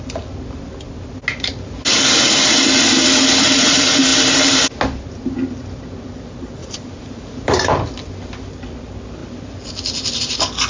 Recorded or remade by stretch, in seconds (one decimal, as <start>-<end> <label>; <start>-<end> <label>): 0.0-6.6 recorded; 6.6-7.8 remade; 7.8-10.7 recorded